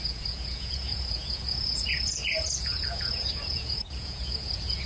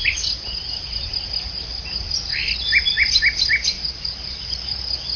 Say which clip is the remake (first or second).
first